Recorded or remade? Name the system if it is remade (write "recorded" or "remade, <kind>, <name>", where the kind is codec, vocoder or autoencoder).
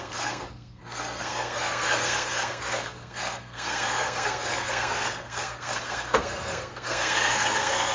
remade, codec, SNAC